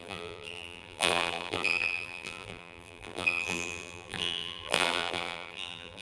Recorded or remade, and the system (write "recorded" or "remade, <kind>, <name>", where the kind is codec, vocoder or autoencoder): remade, vocoder, BigVGAN v2